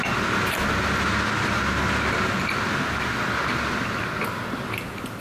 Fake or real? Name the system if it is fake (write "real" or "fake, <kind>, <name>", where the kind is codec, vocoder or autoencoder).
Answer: real